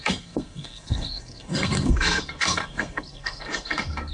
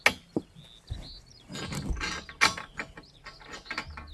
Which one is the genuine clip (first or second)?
second